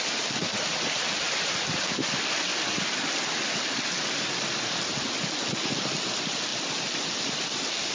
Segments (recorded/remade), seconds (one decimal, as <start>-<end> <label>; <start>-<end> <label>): 0.0-7.9 recorded